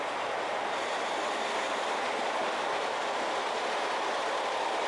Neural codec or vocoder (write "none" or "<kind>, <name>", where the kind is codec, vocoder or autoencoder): none